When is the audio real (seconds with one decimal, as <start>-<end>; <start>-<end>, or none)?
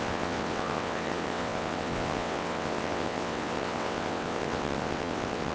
none